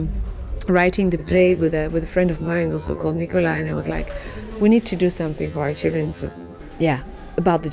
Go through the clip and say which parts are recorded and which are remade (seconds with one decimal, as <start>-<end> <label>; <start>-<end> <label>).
0.0-1.2 recorded; 1.2-1.7 remade; 1.7-2.4 recorded; 2.4-3.9 remade; 3.9-5.4 recorded; 5.4-6.6 remade; 6.6-7.7 recorded